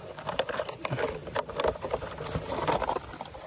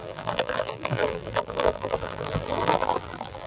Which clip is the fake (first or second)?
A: second